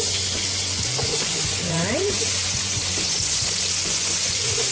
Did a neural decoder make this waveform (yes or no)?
yes